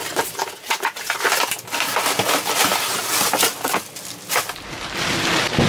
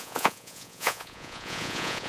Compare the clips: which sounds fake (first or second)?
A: second